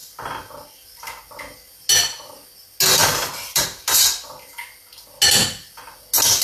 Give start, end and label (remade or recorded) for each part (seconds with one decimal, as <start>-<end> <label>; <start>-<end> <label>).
0.0-1.0 remade; 1.0-3.0 recorded; 3.0-3.6 remade; 3.6-6.4 recorded